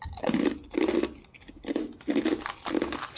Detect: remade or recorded recorded